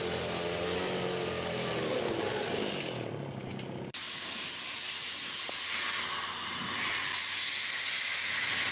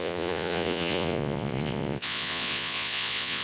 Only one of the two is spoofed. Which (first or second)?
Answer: second